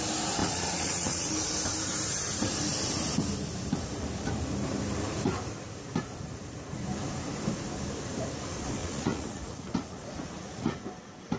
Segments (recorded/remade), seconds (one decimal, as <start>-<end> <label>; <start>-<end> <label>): 0.0-0.4 recorded; 0.4-1.3 remade; 1.3-8.8 recorded; 8.8-10.8 remade; 10.8-11.4 recorded